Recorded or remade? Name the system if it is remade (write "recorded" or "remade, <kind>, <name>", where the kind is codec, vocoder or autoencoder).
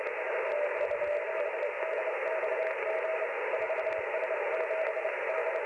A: recorded